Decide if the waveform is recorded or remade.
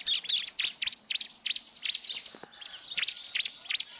recorded